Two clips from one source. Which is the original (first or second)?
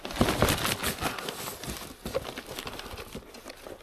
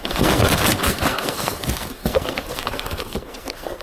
first